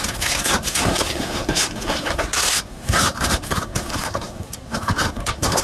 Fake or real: fake